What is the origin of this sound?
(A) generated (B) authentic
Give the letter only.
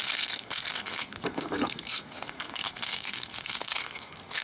A